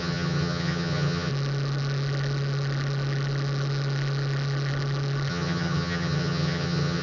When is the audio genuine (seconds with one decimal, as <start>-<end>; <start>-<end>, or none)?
1.3-5.3